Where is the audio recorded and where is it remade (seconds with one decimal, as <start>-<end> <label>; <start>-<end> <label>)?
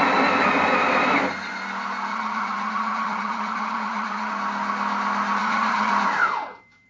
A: 0.0-2.1 recorded; 2.1-4.3 remade; 4.3-5.4 recorded; 5.4-5.9 remade; 5.9-6.9 recorded